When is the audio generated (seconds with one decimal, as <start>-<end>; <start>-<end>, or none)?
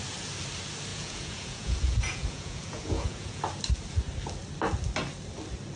0.9-3.4